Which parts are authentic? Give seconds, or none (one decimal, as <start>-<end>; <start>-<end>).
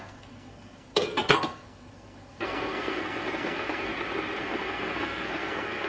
3.9-4.4